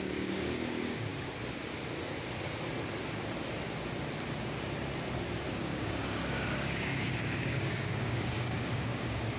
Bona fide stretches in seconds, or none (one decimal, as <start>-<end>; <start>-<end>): 1.1-5.5